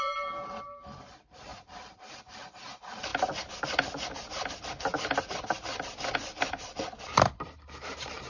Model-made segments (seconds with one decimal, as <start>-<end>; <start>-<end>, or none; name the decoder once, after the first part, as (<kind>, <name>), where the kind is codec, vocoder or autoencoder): 0.0-3.1 (vocoder, BigVGAN v2); 7.3-8.3